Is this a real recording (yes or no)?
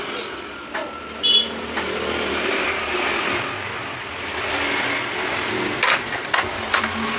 yes